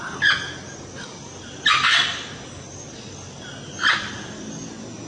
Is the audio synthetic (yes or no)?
no